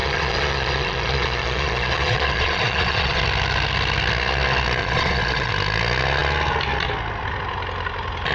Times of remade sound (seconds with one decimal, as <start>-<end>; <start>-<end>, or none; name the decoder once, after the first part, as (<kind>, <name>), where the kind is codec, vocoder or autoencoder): 0.0-3.2 (vocoder, Vocos); 4.8-5.5